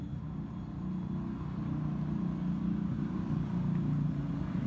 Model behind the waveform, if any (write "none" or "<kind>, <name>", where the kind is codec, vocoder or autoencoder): none